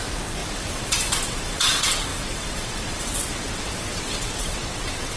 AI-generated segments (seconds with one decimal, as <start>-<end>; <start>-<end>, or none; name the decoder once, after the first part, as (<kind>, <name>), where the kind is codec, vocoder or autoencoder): 0.0-5.2 (vocoder, WaveNeXt)